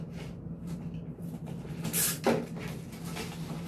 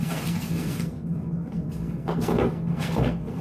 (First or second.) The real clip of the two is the first